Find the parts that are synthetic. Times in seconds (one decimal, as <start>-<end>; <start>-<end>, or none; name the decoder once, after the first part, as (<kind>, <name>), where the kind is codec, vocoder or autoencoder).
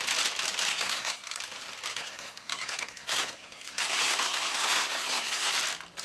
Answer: 0.7-1.4 (codec, SNAC); 1.9-5.5